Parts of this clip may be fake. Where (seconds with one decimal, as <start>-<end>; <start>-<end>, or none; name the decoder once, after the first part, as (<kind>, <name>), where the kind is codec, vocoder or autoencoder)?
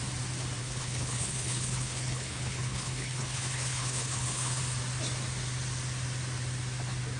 0.6-4.6 (codec, HILCodec)